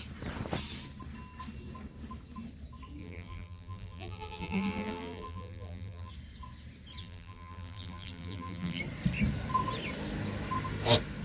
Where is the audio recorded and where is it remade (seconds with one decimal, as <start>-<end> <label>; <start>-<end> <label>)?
0.0-3.0 recorded; 3.0-6.1 remade; 6.1-7.0 recorded; 7.0-8.8 remade; 8.8-11.2 recorded